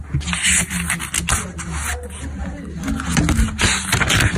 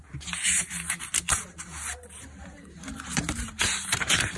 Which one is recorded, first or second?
first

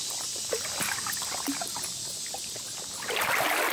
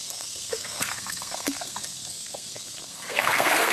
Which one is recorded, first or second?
first